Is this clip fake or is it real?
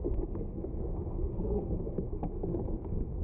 fake